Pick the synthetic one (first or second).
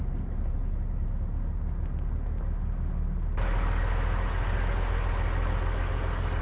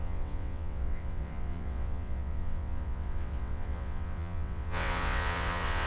second